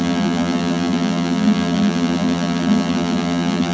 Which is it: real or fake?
fake